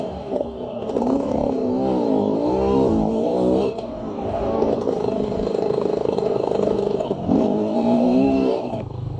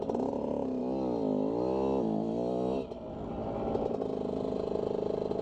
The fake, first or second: first